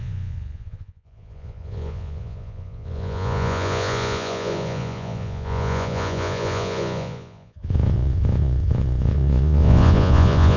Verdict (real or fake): fake